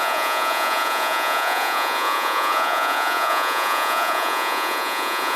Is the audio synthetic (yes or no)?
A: yes